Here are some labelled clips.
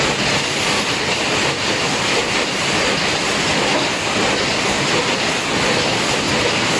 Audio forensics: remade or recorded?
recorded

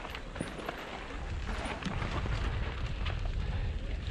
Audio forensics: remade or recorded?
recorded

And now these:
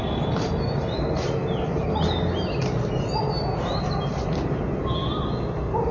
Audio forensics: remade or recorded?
recorded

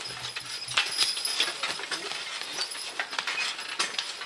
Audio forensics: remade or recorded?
recorded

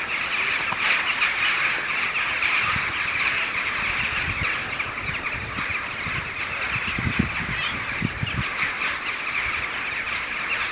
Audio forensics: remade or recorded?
recorded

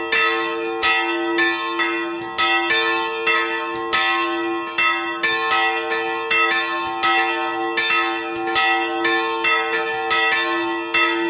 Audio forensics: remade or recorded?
recorded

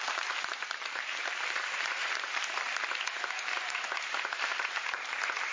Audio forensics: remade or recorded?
remade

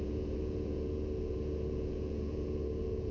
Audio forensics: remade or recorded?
remade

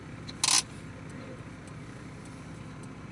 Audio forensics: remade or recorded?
recorded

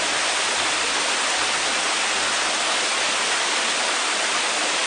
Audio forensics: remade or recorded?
recorded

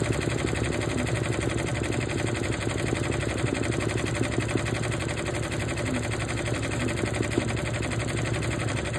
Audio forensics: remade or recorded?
recorded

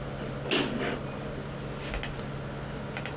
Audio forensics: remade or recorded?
recorded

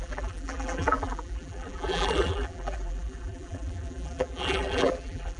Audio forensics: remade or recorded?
remade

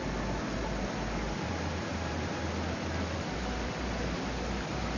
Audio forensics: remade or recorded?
recorded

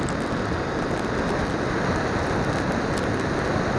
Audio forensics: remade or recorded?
recorded